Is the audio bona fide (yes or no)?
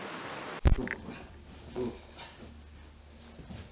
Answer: yes